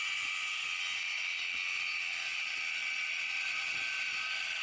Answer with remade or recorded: recorded